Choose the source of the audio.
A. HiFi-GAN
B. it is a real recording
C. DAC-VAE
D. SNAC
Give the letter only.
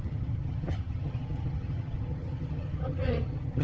A